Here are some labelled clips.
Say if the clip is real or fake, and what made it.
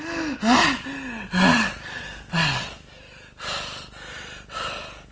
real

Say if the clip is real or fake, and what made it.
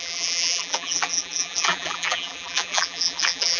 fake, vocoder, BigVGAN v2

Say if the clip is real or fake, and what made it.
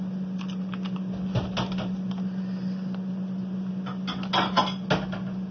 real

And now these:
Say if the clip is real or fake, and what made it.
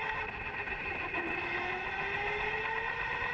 real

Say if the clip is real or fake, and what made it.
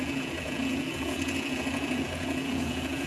fake, vocoder, Vocos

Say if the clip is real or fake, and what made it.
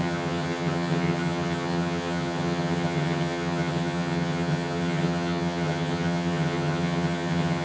fake, vocoder, HiFi-GAN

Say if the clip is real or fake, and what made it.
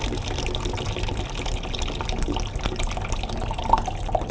real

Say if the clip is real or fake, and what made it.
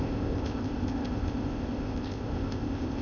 fake, codec, ZipCodec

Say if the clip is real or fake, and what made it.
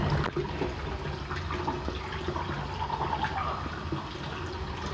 real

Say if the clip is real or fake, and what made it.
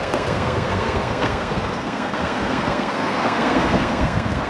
fake, codec, SNAC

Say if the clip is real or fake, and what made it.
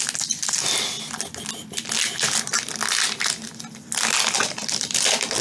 real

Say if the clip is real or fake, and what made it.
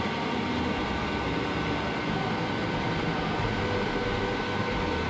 real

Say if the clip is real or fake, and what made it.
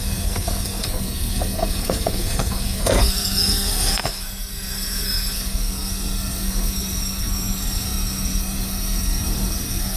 fake, codec, SNAC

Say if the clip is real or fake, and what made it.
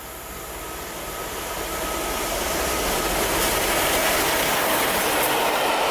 real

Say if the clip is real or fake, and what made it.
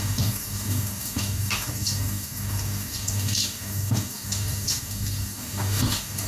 fake, codec, DAC